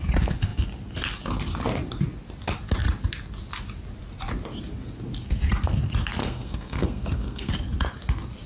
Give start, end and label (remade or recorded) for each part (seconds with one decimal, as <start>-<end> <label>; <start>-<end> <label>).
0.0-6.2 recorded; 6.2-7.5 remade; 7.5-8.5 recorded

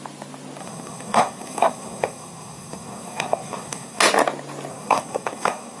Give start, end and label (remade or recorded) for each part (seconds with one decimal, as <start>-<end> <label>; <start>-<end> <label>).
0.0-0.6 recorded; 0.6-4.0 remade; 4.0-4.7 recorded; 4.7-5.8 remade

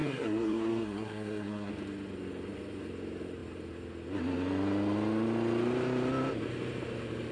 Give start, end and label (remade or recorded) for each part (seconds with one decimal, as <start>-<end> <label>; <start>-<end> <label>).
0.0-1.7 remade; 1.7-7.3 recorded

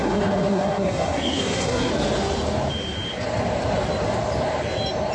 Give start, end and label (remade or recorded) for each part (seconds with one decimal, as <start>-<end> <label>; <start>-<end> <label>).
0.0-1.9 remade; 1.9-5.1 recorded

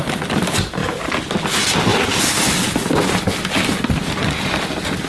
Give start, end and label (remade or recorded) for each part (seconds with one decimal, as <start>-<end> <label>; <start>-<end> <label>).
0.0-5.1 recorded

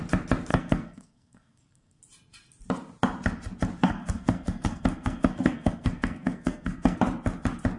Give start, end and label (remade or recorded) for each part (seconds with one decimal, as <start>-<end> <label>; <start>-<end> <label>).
0.0-0.5 recorded; 0.5-2.0 remade; 2.0-3.8 recorded; 3.8-7.0 remade; 7.0-7.8 recorded